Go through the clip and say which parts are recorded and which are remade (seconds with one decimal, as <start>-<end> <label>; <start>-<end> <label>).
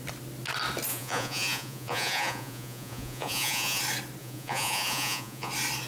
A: 0.0-0.9 recorded; 0.9-3.8 remade; 3.8-4.2 recorded; 4.2-5.5 remade; 5.5-5.9 recorded